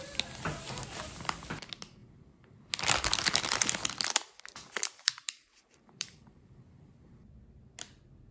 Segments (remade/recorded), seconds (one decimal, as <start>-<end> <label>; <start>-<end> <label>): 0.0-4.8 recorded; 4.8-6.5 remade; 6.5-8.3 recorded